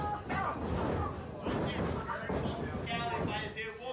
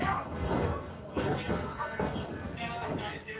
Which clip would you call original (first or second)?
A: first